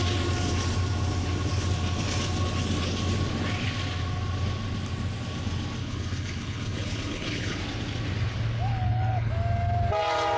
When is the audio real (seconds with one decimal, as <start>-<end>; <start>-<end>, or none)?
0.0-5.8; 7.6-8.7; 9.3-10.4